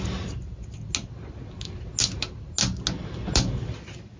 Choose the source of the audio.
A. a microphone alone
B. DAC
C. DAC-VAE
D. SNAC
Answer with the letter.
A